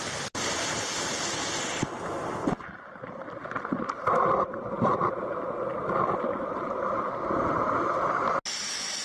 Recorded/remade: recorded